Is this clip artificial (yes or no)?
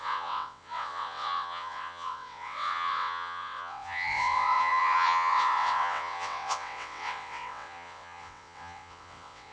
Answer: yes